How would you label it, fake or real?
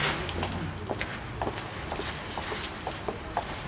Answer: real